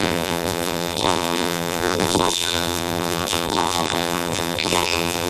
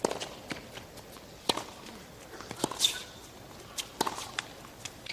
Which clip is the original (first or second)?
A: second